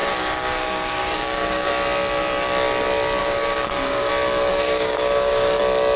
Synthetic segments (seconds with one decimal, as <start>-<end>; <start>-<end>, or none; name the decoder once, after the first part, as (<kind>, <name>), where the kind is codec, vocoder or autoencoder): 0.0-1.7 (codec, DAC); 3.2-4.1; 4.5-5.6